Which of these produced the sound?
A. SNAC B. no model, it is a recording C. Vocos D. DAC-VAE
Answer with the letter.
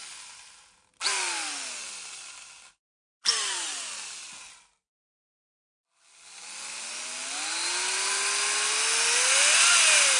B